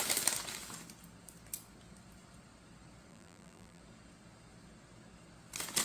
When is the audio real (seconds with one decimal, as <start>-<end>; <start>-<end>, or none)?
0.0-3.1; 3.8-5.8